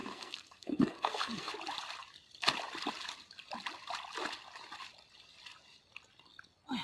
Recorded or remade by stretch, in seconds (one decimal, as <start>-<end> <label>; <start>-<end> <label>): 0.0-1.5 remade; 1.5-6.8 recorded